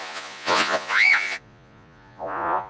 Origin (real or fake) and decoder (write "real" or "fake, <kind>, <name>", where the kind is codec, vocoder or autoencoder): fake, vocoder, Vocos